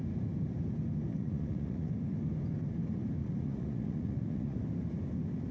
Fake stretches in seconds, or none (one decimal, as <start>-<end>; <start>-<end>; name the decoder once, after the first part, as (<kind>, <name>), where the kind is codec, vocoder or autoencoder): 1.1-1.9 (vocoder, Vocos); 3.2-4.6